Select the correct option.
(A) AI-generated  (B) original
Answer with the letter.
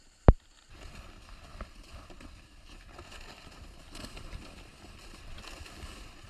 B